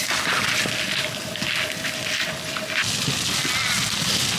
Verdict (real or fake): real